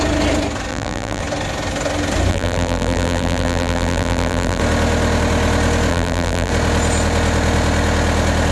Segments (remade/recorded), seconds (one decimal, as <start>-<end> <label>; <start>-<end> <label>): 0.0-0.7 recorded; 0.7-1.2 remade; 1.2-2.3 recorded; 2.3-4.6 remade; 4.6-5.9 recorded; 5.9-6.5 remade; 6.5-8.5 recorded